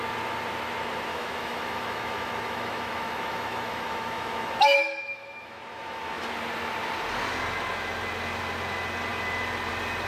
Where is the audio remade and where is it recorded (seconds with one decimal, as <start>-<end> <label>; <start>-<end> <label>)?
0.0-1.1 recorded; 1.1-6.3 remade; 6.3-10.1 recorded

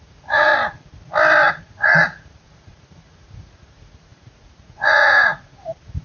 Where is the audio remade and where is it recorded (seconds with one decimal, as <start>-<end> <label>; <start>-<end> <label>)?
0.0-0.5 remade; 0.5-1.6 recorded; 1.6-6.0 remade